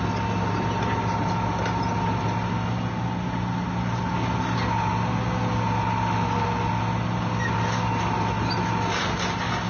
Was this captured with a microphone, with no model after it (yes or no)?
yes